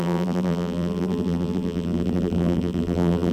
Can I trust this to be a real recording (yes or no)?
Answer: no